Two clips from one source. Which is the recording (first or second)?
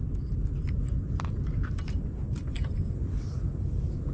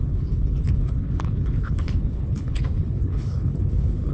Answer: first